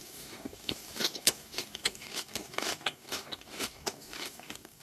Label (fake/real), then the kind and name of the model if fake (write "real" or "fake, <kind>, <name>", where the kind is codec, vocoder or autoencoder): fake, codec, DAC